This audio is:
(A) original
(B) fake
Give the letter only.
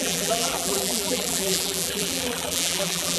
B